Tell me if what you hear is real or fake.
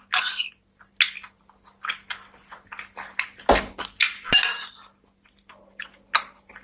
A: real